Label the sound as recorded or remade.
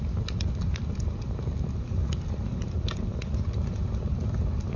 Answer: recorded